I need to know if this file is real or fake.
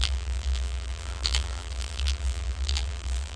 fake